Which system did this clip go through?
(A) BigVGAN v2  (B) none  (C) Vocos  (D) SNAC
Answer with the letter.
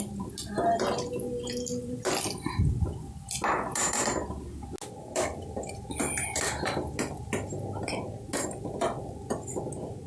B